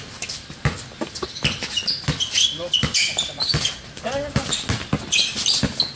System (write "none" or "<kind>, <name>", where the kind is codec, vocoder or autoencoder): none